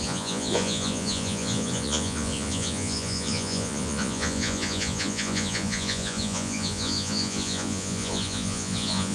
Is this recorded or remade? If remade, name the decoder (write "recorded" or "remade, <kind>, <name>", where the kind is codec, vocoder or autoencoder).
remade, vocoder, Vocos